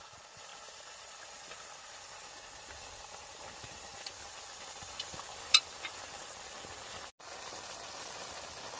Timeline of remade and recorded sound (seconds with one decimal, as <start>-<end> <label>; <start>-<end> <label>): 0.0-8.8 recorded